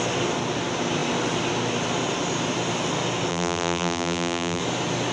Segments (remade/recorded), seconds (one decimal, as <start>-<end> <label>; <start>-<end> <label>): 0.0-3.3 recorded; 3.3-4.6 remade; 4.6-5.1 recorded

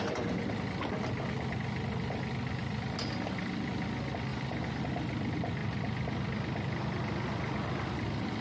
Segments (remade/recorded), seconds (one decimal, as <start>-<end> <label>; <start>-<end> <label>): 0.0-4.3 recorded; 4.3-4.8 remade; 4.8-8.4 recorded

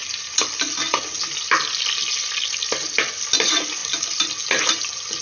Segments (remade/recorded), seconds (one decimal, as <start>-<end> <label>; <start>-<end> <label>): 0.0-5.2 recorded

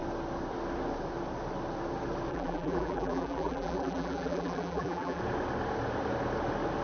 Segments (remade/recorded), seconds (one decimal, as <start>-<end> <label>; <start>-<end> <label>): 0.0-2.3 recorded; 2.3-5.2 remade; 5.2-6.8 recorded

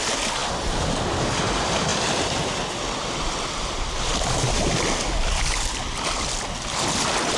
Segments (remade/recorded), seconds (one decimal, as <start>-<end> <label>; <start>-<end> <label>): 0.0-1.9 recorded; 1.9-4.7 remade; 4.7-7.4 recorded

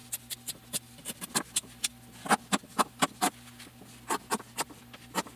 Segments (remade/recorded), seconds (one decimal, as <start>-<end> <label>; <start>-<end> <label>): 0.0-5.4 recorded